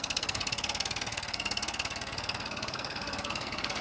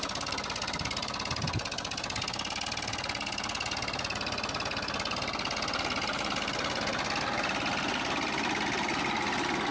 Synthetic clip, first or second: first